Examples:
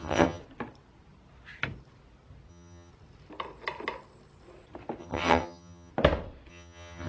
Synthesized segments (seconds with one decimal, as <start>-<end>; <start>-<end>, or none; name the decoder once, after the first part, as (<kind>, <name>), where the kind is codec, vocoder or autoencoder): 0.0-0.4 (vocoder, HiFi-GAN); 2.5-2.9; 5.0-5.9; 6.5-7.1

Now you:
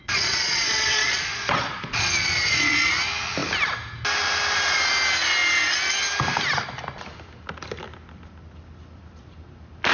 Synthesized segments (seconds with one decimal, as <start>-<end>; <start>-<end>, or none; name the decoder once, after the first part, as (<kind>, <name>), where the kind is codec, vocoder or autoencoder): 0.0-2.9 (vocoder, Vocos)

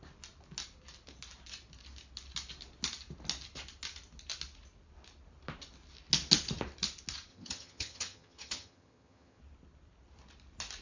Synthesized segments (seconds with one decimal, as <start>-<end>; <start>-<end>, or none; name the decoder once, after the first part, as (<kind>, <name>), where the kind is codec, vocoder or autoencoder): 7.3-9.4 (vocoder, HiFi-GAN)

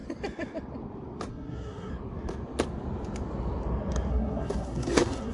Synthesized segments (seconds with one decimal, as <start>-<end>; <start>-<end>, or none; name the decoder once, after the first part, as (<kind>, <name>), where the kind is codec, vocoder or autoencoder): 1.3-1.9 (codec, SNAC); 4.1-5.3

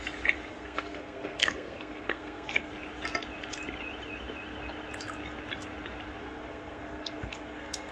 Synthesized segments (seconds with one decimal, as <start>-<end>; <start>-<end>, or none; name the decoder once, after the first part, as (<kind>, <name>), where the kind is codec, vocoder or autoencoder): 0.5-2.7 (codec, SNAC); 6.2-7.9